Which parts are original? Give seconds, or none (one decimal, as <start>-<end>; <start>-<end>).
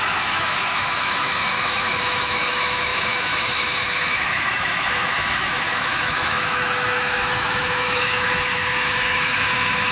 none